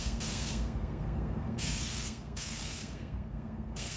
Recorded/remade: remade